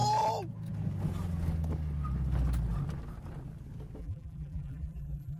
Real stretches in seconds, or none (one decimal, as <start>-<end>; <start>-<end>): 0.0-4.0